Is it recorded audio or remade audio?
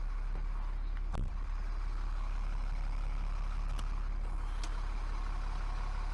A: recorded